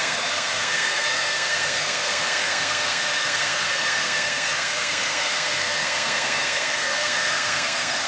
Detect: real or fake fake